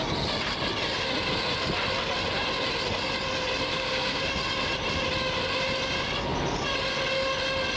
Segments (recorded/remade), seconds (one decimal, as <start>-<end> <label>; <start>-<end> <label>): 0.0-3.7 recorded; 3.7-4.2 remade; 4.2-7.8 recorded